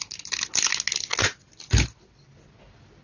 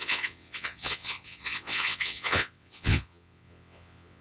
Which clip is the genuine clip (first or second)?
first